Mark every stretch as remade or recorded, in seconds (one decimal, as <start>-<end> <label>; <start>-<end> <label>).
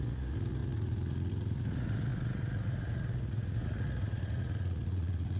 0.0-5.4 remade